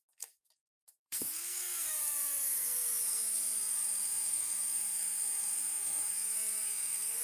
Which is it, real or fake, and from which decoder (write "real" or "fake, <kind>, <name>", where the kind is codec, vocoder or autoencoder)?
fake, codec, SNAC